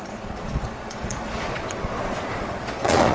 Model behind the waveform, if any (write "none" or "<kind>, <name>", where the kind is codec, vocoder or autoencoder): vocoder, Vocos